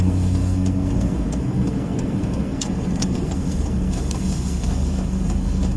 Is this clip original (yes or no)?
no